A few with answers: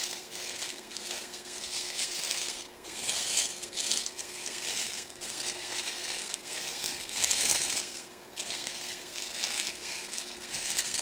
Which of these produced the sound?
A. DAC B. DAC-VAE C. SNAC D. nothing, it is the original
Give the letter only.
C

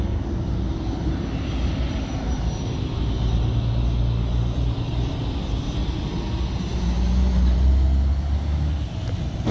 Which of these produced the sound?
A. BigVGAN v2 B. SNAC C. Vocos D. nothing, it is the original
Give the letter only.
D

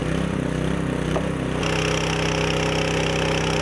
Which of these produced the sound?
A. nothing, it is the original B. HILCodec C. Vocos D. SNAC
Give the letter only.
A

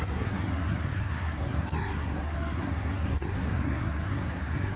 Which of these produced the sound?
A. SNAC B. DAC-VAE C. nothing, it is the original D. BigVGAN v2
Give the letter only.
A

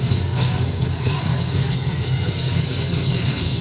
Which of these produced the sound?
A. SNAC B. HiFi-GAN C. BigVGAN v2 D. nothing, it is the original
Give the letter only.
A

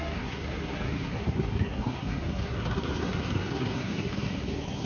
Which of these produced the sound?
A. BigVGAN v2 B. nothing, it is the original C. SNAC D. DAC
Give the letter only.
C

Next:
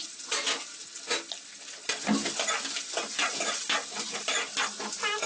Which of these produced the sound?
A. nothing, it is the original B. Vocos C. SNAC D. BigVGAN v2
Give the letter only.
A